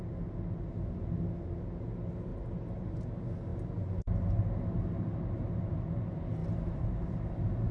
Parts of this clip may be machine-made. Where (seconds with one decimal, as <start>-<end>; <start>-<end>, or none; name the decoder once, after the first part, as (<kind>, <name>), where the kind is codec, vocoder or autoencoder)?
2.3-2.9 (vocoder, BigVGAN v2); 6.4-7.1